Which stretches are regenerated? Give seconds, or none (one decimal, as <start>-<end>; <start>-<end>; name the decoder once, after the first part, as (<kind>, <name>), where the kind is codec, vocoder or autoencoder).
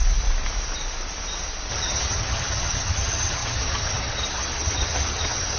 1.7-5.6 (vocoder, HiFi-GAN)